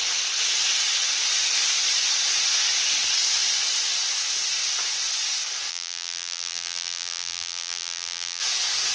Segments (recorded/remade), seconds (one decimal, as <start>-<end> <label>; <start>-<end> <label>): 0.0-5.7 recorded; 5.7-8.4 remade; 8.4-8.9 recorded

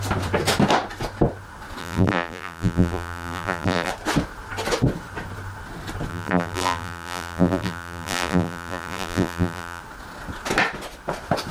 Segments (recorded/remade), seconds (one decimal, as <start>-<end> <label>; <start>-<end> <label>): 0.0-1.8 recorded; 1.8-3.9 remade; 3.9-6.1 recorded; 6.1-9.8 remade; 9.8-11.5 recorded

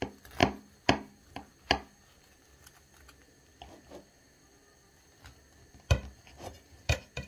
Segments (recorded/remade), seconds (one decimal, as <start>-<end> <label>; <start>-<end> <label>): 0.0-3.5 remade; 3.5-4.2 recorded; 4.2-7.3 remade

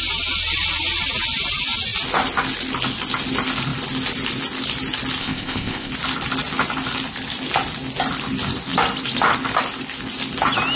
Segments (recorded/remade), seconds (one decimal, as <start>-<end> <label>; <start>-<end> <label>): 0.0-5.2 recorded; 5.2-5.9 remade; 5.9-10.8 recorded

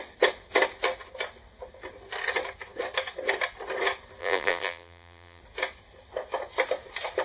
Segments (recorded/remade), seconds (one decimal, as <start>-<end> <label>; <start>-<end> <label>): 0.0-4.2 recorded; 4.2-5.4 remade; 5.4-7.2 recorded